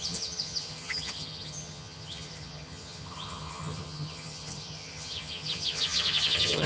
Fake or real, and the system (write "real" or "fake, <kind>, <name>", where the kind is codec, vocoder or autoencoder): fake, vocoder, HiFi-GAN